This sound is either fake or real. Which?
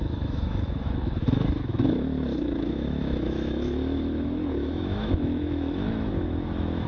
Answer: fake